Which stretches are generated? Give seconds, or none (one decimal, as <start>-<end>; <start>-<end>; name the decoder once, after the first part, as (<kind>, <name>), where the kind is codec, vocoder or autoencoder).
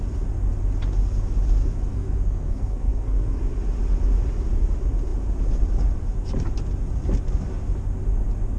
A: 1.9-3.4 (codec, SNAC)